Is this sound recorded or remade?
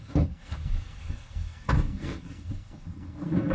remade